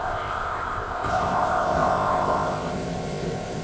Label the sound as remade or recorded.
remade